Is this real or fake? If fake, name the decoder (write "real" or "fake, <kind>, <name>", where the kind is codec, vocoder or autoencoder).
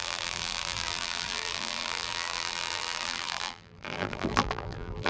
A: fake, vocoder, BigVGAN v2